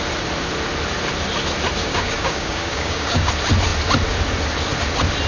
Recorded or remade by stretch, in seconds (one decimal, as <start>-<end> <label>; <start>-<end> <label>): 0.0-1.8 recorded; 1.8-3.3 remade; 3.3-5.3 recorded